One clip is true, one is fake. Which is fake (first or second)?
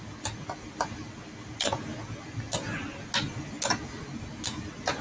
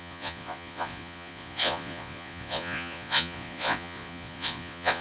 second